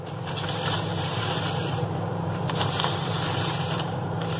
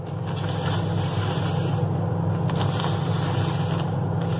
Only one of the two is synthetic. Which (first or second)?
first